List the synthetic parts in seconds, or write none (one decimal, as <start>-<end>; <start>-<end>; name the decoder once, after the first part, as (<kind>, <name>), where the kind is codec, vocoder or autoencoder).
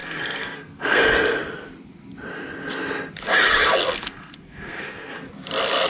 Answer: 0.0-1.0 (codec, SNAC); 3.8-5.1